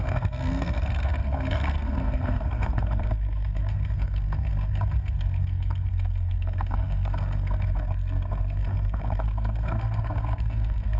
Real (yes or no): no